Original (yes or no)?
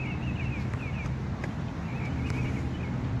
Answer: yes